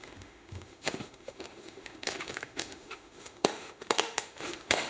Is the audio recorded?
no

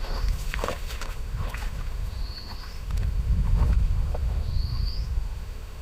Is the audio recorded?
no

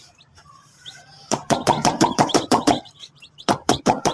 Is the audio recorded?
no